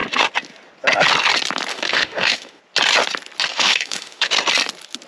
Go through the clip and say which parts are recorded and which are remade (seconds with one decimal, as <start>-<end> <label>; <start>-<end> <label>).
0.0-1.7 recorded; 1.7-2.6 remade; 2.6-3.5 recorded; 3.5-4.3 remade; 4.3-5.1 recorded